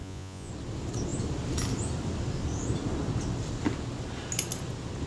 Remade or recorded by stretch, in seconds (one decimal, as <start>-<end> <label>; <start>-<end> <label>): 0.0-0.5 remade; 0.5-5.1 recorded

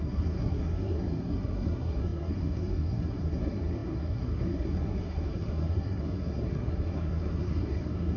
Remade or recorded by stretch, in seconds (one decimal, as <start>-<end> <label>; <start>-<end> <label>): 0.0-8.2 remade

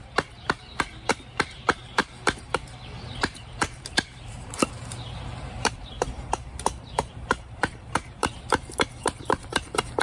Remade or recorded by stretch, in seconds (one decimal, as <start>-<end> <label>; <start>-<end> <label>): 0.0-10.0 remade